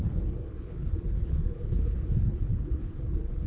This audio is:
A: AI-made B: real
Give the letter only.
A